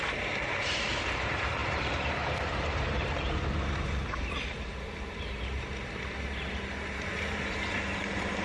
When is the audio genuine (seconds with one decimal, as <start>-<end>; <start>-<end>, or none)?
none